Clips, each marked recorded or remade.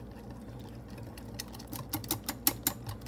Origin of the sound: recorded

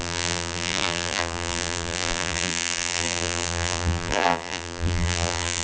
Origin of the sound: remade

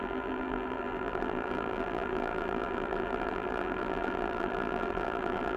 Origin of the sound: remade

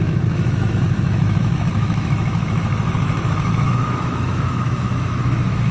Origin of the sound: remade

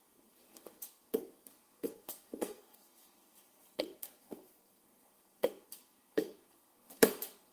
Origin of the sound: remade